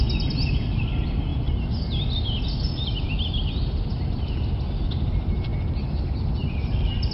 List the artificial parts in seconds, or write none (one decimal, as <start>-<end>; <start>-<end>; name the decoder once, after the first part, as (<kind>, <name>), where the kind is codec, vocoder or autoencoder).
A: none